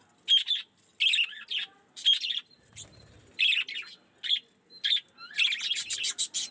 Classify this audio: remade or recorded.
recorded